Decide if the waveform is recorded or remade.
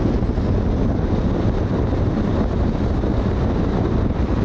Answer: recorded